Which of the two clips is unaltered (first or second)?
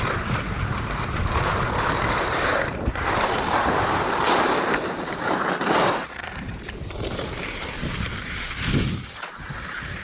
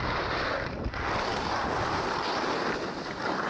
second